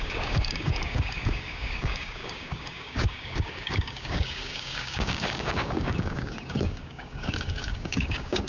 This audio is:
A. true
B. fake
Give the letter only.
B